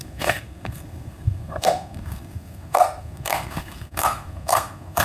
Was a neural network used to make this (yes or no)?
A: yes